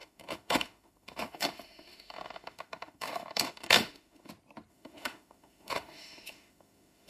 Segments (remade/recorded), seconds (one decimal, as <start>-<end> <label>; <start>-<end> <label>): 0.0-4.3 remade; 4.3-4.7 recorded; 4.7-7.1 remade